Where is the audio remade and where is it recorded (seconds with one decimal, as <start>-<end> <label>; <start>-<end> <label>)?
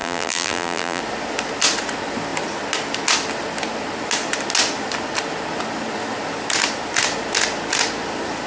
0.0-1.0 remade; 1.0-8.5 recorded